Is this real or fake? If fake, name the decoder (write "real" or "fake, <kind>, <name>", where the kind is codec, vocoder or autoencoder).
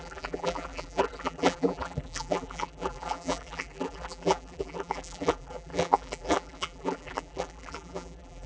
fake, vocoder, BigVGAN v2